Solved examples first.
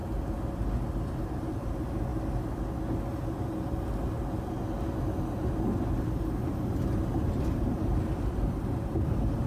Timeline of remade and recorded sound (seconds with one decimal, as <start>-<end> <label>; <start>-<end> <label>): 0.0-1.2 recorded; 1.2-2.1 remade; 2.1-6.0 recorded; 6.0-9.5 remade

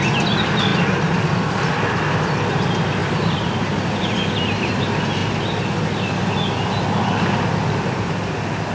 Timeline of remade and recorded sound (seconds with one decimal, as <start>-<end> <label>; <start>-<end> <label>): 0.0-0.7 recorded; 0.7-1.7 remade; 1.7-3.0 recorded; 3.0-4.7 remade; 4.7-8.7 recorded

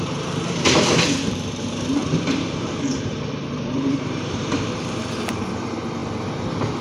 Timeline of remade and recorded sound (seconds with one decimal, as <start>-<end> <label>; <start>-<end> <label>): 0.0-6.0 remade; 6.0-6.8 recorded

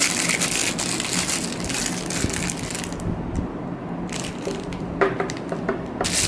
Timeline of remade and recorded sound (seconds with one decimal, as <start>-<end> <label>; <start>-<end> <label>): 0.0-0.6 remade; 0.6-4.4 recorded; 4.4-6.3 remade